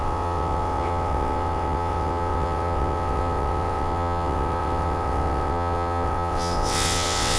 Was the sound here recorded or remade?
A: remade